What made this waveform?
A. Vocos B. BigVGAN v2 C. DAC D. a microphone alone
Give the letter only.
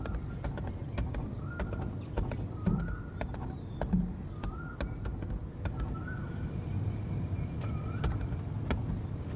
D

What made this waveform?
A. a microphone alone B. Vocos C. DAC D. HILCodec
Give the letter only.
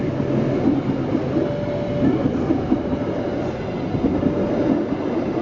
A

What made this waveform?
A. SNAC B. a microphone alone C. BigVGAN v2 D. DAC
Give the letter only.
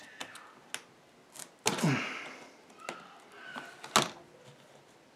B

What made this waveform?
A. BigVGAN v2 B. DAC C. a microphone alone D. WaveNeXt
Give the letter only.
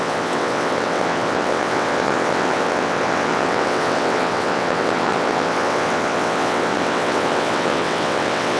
D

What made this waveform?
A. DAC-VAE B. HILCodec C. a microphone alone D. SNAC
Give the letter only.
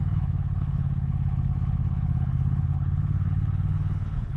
B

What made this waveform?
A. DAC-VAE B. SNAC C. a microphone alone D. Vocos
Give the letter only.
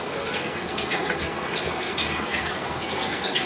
B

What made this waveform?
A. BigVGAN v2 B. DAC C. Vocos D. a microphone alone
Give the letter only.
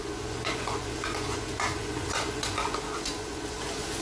C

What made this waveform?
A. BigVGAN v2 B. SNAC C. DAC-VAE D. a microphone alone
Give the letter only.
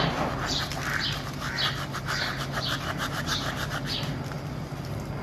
D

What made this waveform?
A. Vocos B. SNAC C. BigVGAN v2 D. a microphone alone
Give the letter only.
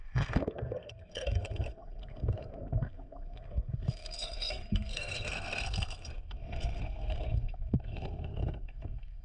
B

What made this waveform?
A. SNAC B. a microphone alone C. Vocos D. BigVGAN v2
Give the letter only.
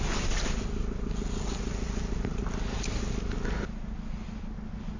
B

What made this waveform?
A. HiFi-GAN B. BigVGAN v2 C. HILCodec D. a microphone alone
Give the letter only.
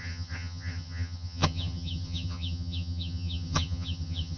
A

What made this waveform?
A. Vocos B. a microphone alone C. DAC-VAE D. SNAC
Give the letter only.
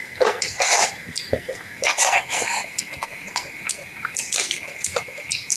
D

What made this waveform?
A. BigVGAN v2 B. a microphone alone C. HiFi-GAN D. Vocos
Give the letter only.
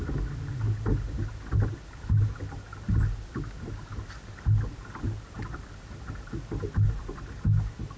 B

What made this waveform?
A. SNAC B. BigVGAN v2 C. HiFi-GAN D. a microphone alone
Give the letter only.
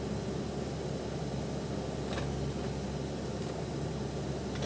D